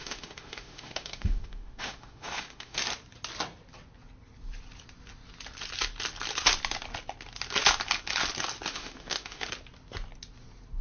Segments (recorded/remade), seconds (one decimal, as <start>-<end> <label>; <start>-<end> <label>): 0.0-2.8 remade; 2.8-8.7 recorded; 8.7-9.5 remade; 9.5-10.8 recorded